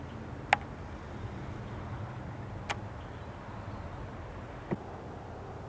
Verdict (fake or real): real